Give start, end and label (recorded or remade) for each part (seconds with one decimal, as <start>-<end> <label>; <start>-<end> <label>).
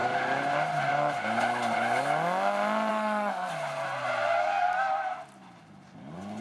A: 0.0-2.9 recorded; 2.9-3.5 remade; 3.5-6.4 recorded